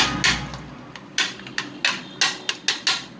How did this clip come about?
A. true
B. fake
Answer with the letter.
A